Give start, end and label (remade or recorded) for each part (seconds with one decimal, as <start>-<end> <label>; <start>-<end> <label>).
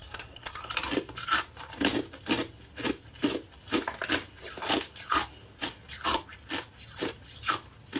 0.0-0.6 remade; 0.6-8.0 recorded